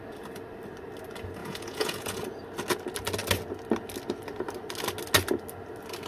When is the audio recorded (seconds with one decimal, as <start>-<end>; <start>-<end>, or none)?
0.0-1.4; 2.2-6.1